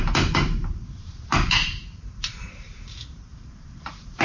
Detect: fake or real fake